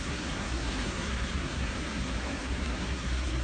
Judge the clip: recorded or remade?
remade